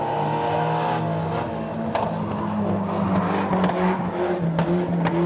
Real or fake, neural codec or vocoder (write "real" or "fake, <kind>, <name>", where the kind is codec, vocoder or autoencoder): real